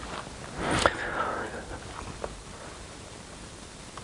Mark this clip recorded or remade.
recorded